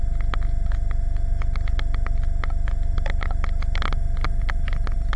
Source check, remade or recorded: recorded